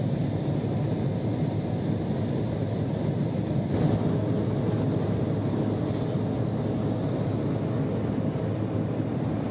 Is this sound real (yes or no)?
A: yes